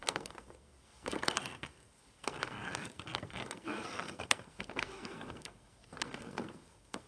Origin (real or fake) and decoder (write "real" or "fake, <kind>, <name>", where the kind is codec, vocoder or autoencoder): fake, codec, SNAC